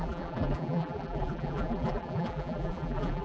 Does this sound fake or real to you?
fake